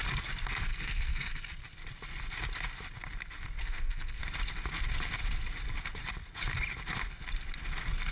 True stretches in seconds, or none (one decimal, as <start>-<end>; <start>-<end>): 0.0-0.7; 1.4-3.6; 4.2-8.1